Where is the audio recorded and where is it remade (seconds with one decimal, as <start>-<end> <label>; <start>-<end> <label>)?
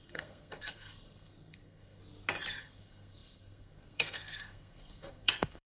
0.0-2.0 remade; 2.0-2.6 recorded; 2.6-5.8 remade